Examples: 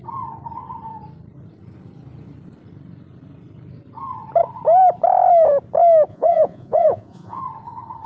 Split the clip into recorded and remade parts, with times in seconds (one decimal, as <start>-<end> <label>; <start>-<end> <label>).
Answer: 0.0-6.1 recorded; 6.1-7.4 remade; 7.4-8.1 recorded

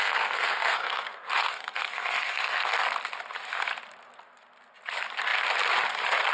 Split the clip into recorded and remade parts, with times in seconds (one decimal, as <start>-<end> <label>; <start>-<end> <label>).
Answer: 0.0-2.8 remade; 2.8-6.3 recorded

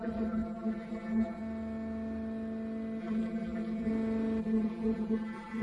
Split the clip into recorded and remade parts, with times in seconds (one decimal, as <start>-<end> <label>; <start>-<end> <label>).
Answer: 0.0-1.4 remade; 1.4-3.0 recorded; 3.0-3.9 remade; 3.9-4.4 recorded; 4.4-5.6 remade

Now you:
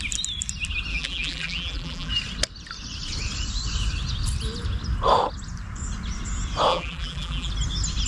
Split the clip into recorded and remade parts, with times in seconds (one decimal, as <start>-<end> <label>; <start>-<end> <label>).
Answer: 0.0-0.9 recorded; 0.9-2.1 remade; 2.1-6.7 recorded; 6.7-7.5 remade; 7.5-8.1 recorded